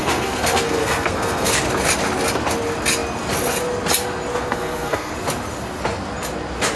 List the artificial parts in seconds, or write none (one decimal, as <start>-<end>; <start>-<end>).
0.0-1.5; 4.3-5.1